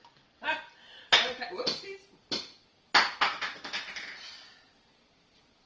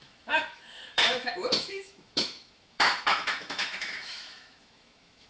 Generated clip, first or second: second